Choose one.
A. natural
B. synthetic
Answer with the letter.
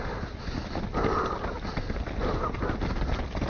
A